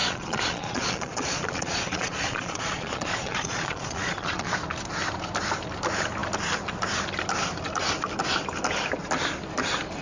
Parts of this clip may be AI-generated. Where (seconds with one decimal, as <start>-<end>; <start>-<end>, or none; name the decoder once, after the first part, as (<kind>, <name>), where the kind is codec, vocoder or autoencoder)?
0.0-4.5 (vocoder, Vocos)